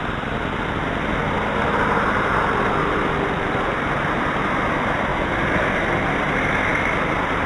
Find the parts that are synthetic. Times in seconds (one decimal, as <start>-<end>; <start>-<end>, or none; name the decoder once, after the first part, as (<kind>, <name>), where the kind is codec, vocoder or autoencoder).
1.2-4.1 (vocoder, BigVGAN v2); 5.1-5.9; 6.7-7.5